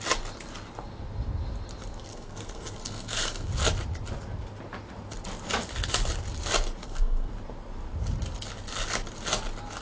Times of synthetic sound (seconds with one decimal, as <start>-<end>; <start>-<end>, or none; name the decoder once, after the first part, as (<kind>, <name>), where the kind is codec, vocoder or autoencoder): 2.1-3.5 (codec, SNAC); 6.8-7.3